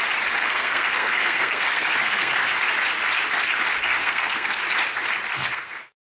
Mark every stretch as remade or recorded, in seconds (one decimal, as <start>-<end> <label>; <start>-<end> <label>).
0.0-0.4 recorded; 0.4-2.3 remade; 2.3-4.0 recorded; 4.0-4.6 remade; 4.6-5.3 recorded; 5.3-6.2 remade